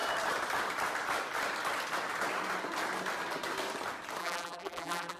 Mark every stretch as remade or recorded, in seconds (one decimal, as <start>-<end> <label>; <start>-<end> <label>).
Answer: 0.0-4.2 recorded; 4.2-5.2 remade